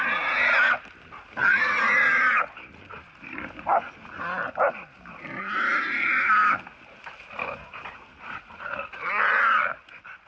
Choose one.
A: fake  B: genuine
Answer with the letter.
B